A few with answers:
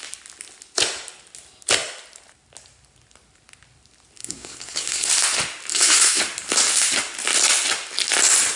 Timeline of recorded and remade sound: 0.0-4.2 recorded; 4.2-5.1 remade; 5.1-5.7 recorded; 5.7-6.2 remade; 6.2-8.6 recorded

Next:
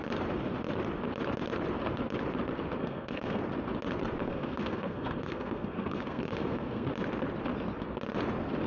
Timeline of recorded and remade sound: 0.0-2.8 recorded; 2.8-3.4 remade; 3.4-4.2 recorded; 4.2-6.9 remade; 6.9-8.7 recorded

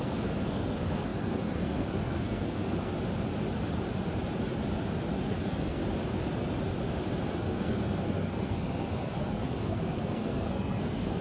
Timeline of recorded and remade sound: 0.0-2.9 remade; 2.9-5.3 recorded; 5.3-5.8 remade; 5.8-7.3 recorded; 7.3-11.2 remade

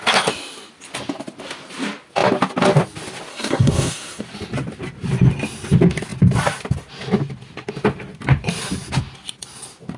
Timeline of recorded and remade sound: 0.0-3.3 recorded; 3.3-4.2 remade; 4.2-10.0 recorded

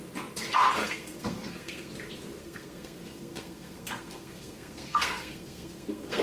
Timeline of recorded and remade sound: 0.0-0.8 recorded; 0.8-1.9 remade; 1.9-2.4 recorded; 2.4-6.2 remade